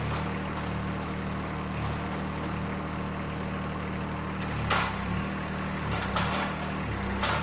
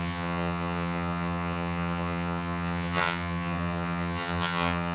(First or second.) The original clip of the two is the first